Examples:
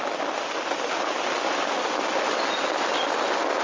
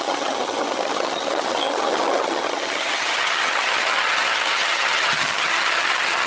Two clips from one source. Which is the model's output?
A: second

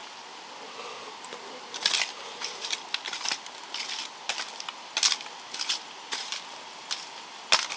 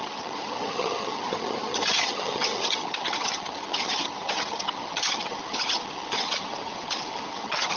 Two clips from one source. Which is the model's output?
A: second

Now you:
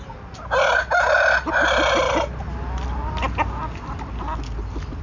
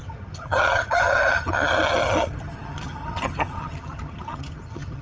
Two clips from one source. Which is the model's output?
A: second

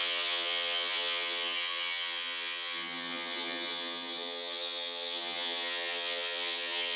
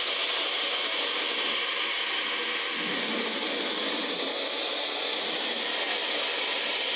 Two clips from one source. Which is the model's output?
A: first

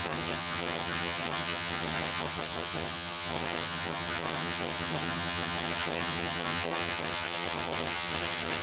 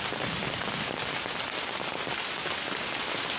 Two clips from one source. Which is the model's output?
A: first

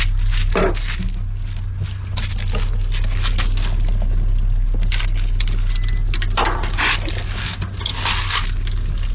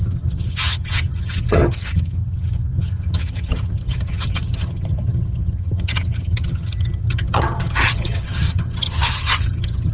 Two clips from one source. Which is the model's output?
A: second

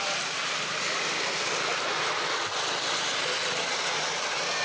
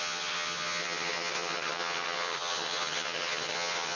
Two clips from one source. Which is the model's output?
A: second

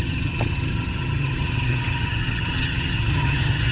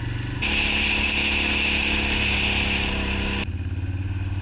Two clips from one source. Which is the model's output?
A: first